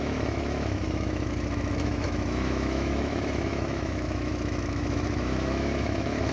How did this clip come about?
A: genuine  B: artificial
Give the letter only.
B